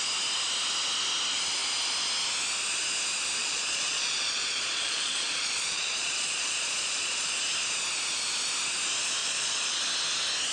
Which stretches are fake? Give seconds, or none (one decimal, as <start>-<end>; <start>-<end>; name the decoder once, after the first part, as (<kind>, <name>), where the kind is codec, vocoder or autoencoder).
3.4-7.4 (vocoder, Vocos); 9.2-9.8